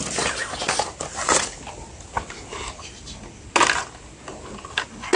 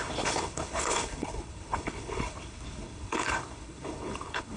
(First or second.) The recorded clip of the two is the first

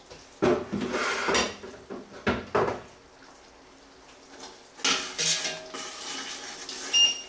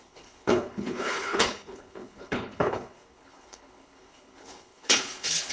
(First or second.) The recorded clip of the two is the first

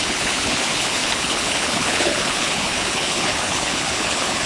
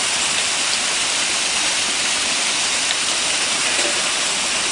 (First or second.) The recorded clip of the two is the second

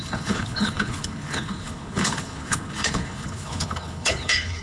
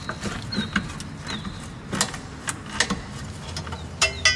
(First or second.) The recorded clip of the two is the second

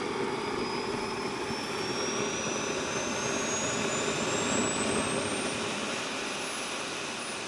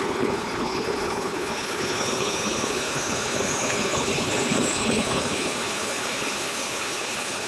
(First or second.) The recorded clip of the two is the first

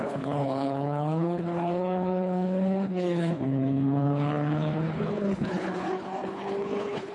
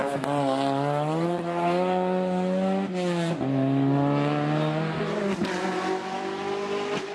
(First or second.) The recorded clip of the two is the second